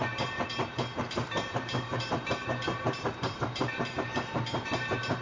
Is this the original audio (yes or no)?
no